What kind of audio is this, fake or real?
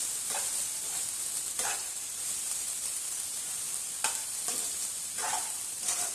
fake